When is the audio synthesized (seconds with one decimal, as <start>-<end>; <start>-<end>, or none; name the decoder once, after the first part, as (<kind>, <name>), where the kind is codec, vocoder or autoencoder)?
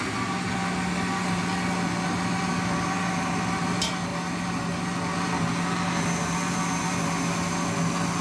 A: none